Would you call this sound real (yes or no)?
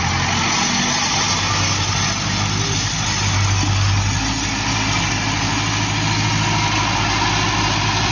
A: yes